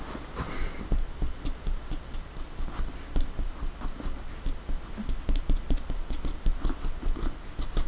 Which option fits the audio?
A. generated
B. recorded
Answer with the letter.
B